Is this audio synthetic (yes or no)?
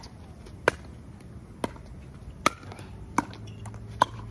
no